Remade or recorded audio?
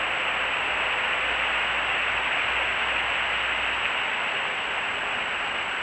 recorded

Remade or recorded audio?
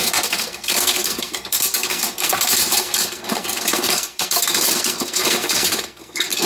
remade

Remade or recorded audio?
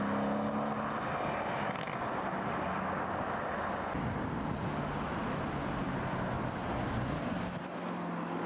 recorded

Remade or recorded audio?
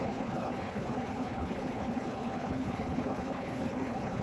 remade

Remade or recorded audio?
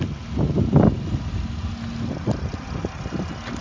recorded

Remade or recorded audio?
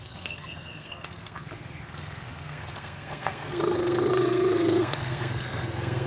remade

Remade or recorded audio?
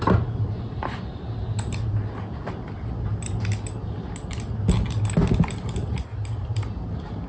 recorded